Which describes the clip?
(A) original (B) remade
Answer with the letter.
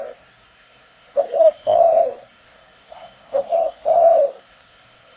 B